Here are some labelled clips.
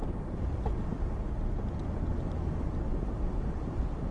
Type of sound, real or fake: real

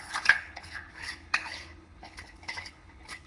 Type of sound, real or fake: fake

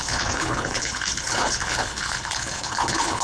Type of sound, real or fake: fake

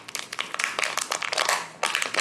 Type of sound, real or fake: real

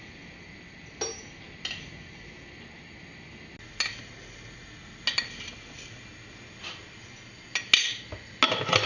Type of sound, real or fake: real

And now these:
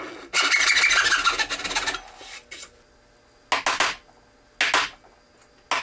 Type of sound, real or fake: real